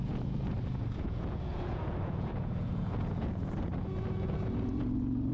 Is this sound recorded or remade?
remade